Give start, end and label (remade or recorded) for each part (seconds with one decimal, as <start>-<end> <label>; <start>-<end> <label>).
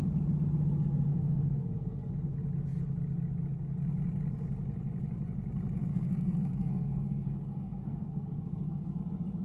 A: 0.0-1.1 recorded; 1.1-2.1 remade; 2.1-5.9 recorded; 5.9-9.0 remade; 9.0-9.4 recorded